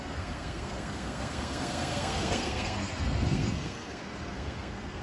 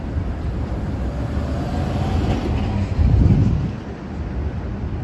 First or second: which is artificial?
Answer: first